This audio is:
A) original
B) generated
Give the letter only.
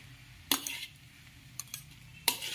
A